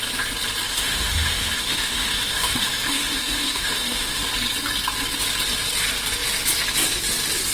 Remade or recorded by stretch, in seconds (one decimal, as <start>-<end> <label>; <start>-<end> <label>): 0.0-0.7 recorded; 0.7-4.2 remade; 4.2-7.5 recorded